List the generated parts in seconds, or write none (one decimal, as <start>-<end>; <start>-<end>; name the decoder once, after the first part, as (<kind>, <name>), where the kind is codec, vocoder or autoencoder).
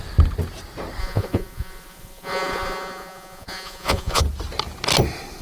1.0-4.2 (vocoder, Vocos)